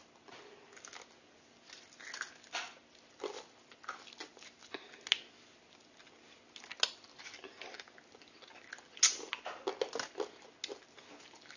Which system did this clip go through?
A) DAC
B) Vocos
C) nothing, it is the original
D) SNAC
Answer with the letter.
C